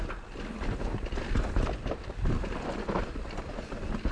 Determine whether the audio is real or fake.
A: real